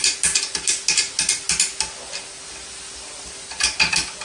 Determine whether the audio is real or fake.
real